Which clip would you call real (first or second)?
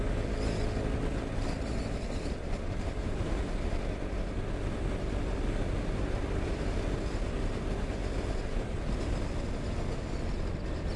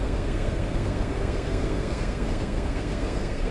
first